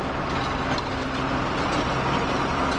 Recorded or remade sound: recorded